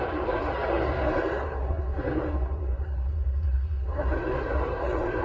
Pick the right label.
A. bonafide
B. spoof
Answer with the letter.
B